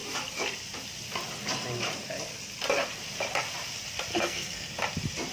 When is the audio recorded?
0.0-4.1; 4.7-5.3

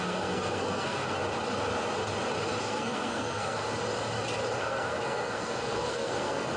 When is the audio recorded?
1.2-2.6; 3.6-4.6

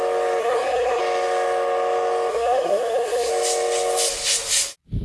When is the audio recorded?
0.0-0.4; 1.0-2.3; 3.3-5.0

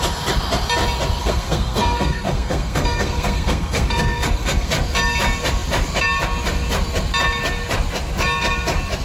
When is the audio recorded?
0.0-1.2; 4.7-9.0

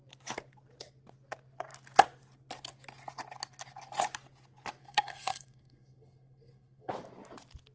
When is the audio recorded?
0.0-4.8; 6.9-7.7